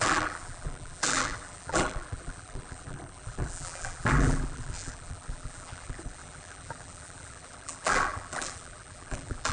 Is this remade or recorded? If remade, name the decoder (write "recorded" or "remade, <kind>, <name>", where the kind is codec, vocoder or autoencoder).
remade, vocoder, BigVGAN v2